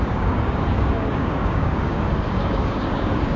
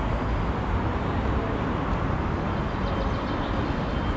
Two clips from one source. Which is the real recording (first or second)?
second